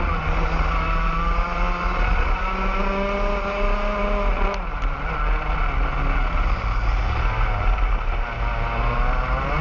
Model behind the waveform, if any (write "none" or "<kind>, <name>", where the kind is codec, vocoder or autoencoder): none